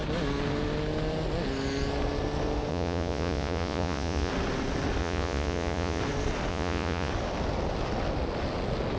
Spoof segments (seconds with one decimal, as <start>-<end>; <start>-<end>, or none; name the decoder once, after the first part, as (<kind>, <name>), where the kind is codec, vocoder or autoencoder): 2.7-4.3 (vocoder, Vocos); 5.0-6.0; 6.5-7.1